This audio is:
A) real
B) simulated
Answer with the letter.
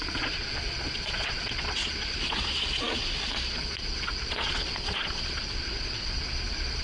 B